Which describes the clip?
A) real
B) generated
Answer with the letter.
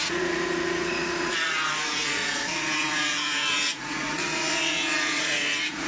B